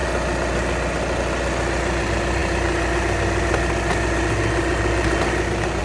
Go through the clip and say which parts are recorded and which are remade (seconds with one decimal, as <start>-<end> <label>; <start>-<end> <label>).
0.0-5.8 recorded